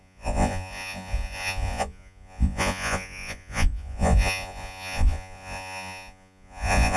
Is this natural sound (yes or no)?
no